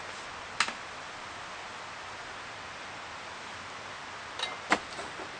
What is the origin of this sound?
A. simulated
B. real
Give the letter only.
B